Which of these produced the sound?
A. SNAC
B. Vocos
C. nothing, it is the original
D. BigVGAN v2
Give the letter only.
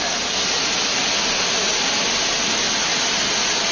C